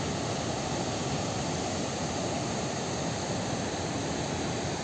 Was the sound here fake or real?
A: real